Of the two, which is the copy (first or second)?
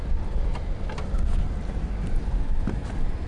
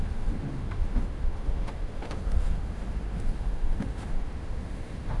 second